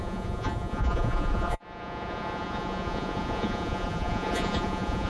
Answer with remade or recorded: remade